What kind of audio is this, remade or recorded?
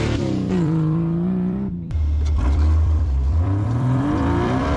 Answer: remade